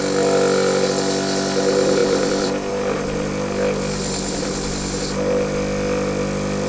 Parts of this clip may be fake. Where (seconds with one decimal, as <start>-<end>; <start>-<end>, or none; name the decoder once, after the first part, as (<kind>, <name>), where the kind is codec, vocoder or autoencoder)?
2.0-2.7 (vocoder, BigVGAN v2)